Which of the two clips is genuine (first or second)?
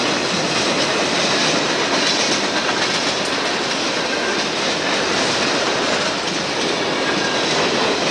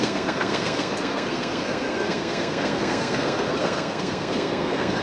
first